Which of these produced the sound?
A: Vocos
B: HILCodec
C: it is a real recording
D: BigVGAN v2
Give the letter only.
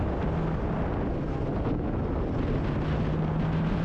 C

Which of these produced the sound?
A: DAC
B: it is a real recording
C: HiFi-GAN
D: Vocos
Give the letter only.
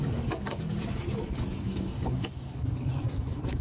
A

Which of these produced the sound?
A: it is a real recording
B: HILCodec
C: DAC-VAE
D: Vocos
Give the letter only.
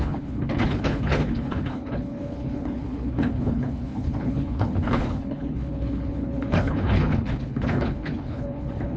B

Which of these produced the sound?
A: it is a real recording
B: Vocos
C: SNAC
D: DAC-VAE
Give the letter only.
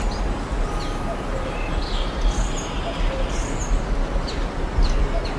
A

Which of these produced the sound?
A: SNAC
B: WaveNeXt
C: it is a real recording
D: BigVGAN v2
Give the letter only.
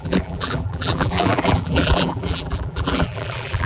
D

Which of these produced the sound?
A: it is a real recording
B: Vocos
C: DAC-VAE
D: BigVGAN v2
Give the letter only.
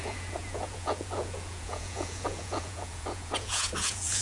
B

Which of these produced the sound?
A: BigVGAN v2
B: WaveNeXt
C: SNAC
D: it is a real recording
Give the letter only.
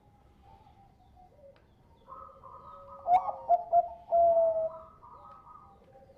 D